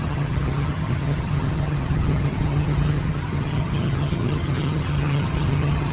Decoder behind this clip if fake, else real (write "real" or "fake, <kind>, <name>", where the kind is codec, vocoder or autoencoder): fake, vocoder, HiFi-GAN